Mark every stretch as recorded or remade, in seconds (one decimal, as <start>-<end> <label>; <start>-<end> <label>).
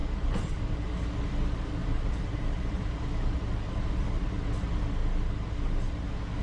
0.0-0.8 remade; 0.8-1.8 recorded; 1.8-3.4 remade; 3.4-6.4 recorded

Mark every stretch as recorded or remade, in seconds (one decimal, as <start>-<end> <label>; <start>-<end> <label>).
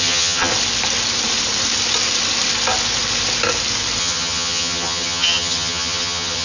0.0-0.5 remade; 0.5-4.0 recorded; 4.0-6.4 remade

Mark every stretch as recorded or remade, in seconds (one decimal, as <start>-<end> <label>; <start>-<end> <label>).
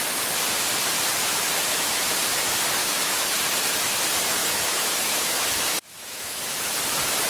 0.0-2.8 recorded; 2.8-3.4 remade; 3.4-4.4 recorded; 4.4-6.4 remade; 6.4-7.3 recorded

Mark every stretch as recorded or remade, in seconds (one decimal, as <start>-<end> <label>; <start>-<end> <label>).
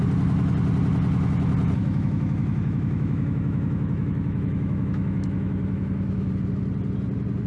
0.0-1.8 recorded; 1.8-6.3 remade; 6.3-7.5 recorded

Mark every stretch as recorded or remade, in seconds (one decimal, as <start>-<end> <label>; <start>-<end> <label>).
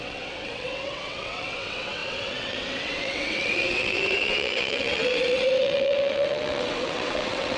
0.0-7.6 remade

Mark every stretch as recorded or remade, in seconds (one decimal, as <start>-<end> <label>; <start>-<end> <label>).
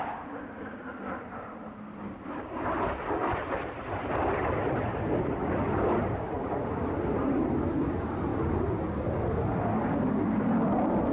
0.0-11.1 recorded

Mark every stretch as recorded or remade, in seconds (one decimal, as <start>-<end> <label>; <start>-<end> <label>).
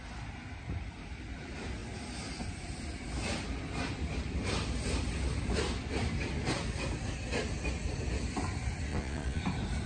0.0-8.9 recorded; 8.9-9.4 remade; 9.4-9.9 recorded